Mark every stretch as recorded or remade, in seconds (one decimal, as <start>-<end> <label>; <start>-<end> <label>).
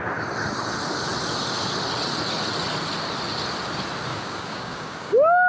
0.0-4.1 recorded; 4.1-5.5 remade